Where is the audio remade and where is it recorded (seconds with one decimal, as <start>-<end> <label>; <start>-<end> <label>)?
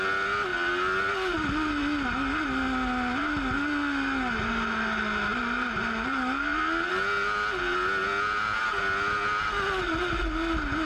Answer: 0.0-10.9 recorded